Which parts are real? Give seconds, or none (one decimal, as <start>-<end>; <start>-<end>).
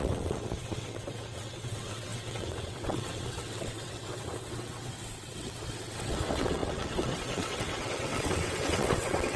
none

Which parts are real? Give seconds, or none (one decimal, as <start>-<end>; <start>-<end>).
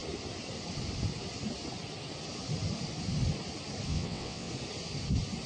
0.0-3.9; 4.5-5.5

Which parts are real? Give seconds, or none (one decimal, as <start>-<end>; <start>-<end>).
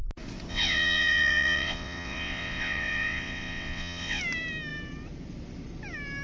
0.0-0.5; 4.2-6.2